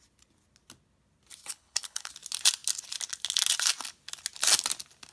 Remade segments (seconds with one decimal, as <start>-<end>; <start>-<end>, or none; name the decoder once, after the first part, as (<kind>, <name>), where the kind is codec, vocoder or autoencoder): 1.4-2.1 (codec, HILCodec)